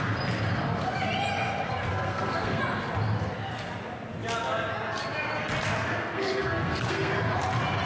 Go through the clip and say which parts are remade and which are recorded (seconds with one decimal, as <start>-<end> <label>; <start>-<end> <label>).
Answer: 0.0-1.9 recorded; 1.9-2.6 remade; 2.6-5.9 recorded; 5.9-7.1 remade; 7.1-7.9 recorded